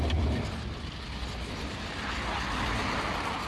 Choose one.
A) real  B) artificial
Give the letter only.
A